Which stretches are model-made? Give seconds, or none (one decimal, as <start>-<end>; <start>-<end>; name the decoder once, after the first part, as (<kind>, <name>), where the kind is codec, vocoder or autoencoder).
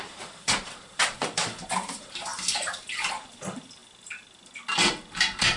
0.0-3.8 (vocoder, BigVGAN v2); 4.9-5.6